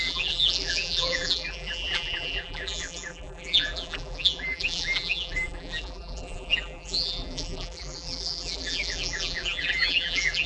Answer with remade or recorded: remade